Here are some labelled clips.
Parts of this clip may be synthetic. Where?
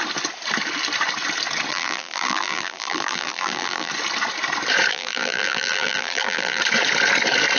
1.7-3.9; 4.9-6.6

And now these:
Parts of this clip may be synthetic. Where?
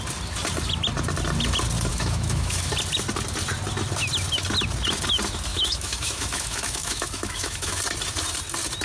1.9-2.7; 5.5-7.8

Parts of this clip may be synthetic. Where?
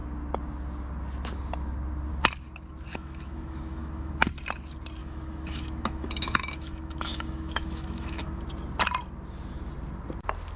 2.9-4.1; 5.0-8.4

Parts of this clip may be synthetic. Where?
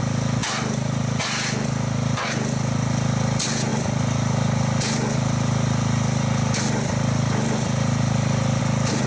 none